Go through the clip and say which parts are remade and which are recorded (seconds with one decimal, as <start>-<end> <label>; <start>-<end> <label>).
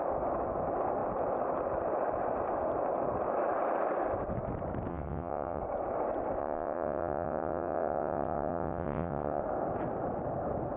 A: 0.0-4.9 recorded; 4.9-5.6 remade; 5.6-6.4 recorded; 6.4-9.4 remade; 9.4-10.8 recorded